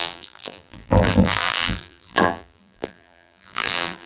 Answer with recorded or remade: remade